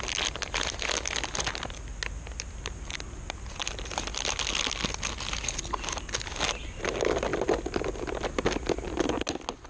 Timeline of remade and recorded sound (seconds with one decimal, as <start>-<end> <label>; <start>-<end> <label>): 0.0-9.7 recorded